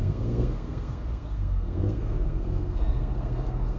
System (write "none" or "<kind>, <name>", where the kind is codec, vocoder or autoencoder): codec, SNAC